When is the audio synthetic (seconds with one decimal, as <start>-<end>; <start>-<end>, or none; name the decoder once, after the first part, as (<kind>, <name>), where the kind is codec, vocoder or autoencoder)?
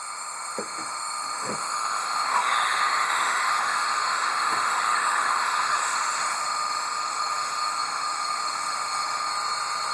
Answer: 0.0-9.3 (autoencoder, DAC-VAE)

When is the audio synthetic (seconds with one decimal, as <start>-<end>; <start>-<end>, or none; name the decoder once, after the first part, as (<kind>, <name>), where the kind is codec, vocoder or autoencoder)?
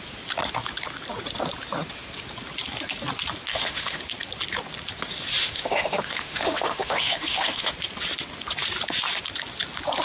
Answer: 3.5-4.0 (autoencoder, DAC-VAE); 5.4-7.7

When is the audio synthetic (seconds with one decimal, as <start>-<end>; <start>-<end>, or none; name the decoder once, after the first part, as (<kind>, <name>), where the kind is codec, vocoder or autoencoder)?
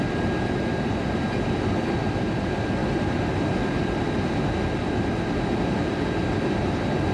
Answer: none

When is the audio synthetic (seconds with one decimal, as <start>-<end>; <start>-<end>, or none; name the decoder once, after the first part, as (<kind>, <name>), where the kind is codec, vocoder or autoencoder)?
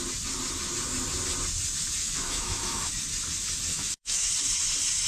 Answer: 2.0-2.9 (autoencoder, DAC-VAE); 3.7-4.3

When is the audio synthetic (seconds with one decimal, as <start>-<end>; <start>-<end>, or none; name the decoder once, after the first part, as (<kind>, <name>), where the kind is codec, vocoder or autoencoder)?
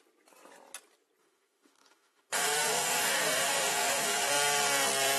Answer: 1.2-4.3 (autoencoder, DAC-VAE)